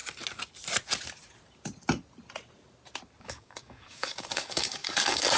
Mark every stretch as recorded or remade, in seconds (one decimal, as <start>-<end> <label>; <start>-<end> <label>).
0.0-3.2 recorded; 3.2-5.4 remade